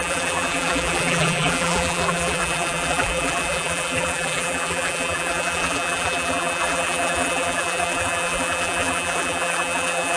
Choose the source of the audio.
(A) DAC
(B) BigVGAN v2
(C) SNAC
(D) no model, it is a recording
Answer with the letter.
B